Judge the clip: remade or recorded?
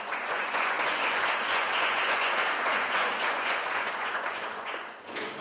remade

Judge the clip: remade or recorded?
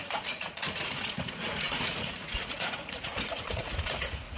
remade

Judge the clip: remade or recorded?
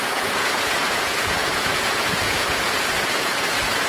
remade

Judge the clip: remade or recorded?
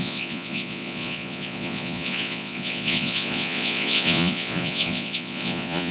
remade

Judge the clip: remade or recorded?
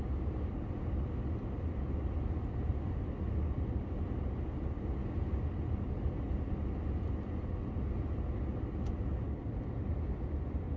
recorded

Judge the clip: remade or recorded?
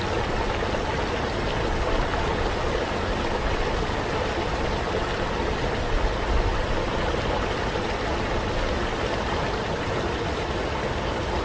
recorded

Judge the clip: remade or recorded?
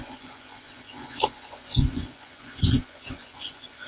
remade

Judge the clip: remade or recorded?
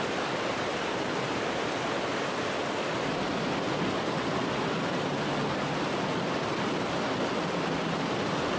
recorded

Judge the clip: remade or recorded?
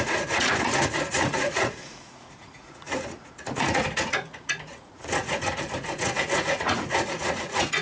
remade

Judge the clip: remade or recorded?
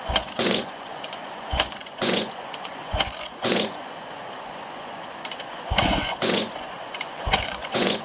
remade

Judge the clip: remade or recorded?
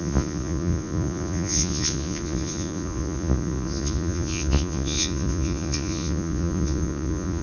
remade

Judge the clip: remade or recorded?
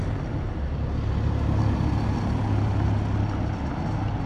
recorded